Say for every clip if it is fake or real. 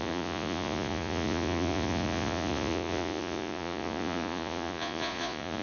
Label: fake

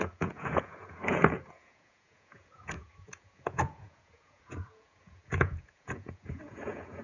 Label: fake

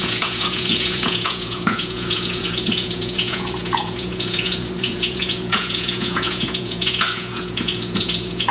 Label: fake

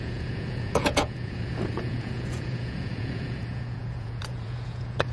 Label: fake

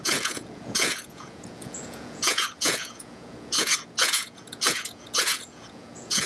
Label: fake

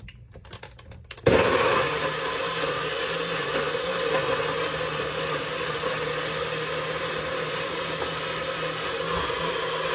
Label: real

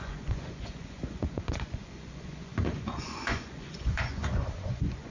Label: fake